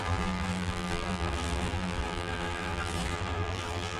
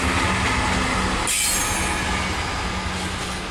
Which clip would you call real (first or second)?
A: second